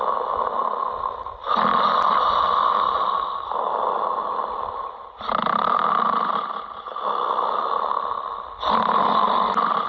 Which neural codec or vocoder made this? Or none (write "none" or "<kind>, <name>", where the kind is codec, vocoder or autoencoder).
none